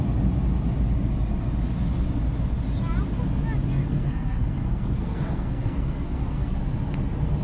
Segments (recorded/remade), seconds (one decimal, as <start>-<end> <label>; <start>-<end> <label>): 0.0-3.7 recorded; 3.7-6.6 remade; 6.6-7.4 recorded